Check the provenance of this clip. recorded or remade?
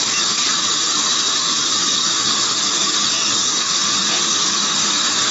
remade